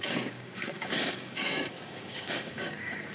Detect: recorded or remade remade